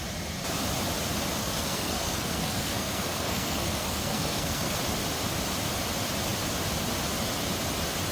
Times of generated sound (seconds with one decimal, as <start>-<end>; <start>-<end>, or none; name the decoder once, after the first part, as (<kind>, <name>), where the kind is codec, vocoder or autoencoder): 1.4-4.8 (codec, SNAC)